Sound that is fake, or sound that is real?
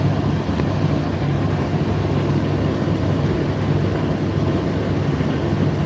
real